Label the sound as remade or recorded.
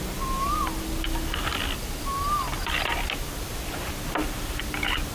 recorded